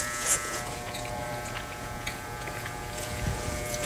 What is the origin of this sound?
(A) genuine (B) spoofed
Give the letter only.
B